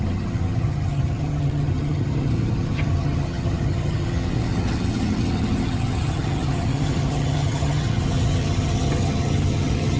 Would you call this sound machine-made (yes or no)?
yes